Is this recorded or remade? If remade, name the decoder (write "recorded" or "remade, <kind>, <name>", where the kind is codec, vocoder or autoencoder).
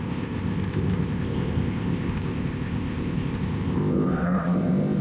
remade, codec, ZipCodec